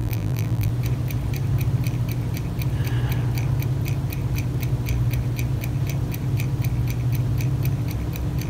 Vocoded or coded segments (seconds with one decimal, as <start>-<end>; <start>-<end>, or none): 0.0-0.7